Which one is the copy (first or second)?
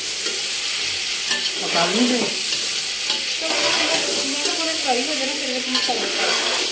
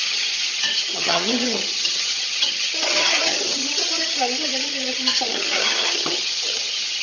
second